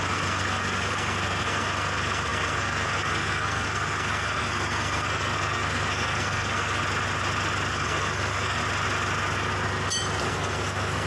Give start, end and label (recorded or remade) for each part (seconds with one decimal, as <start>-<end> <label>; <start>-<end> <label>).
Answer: 0.0-6.8 remade; 6.8-7.7 recorded; 7.7-8.6 remade; 8.6-10.2 recorded; 10.2-11.1 remade